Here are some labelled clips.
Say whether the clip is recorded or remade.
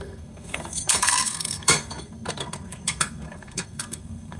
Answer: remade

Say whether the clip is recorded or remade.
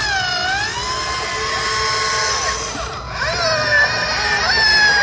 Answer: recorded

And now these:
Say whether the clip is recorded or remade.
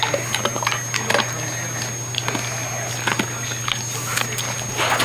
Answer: recorded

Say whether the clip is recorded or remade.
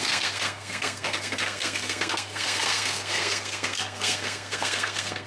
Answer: remade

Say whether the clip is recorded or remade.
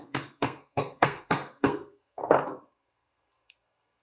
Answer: remade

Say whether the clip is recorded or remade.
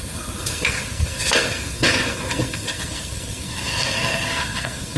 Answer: remade